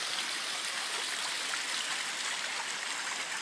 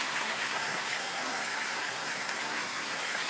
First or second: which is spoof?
second